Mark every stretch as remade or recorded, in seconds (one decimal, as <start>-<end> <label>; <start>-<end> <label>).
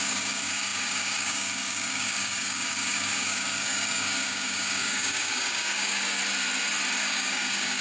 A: 0.0-6.2 remade; 6.2-7.0 recorded; 7.0-7.8 remade